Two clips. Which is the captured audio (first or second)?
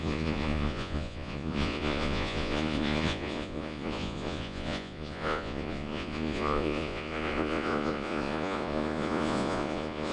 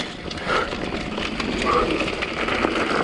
second